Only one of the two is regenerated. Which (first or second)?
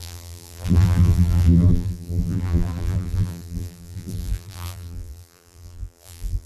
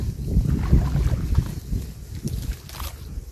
first